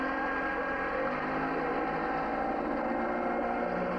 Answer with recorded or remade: recorded